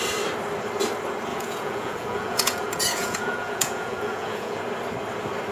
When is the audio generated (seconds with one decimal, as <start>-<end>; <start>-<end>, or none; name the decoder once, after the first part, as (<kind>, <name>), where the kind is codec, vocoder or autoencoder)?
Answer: 1.3-4.6 (vocoder, Vocos)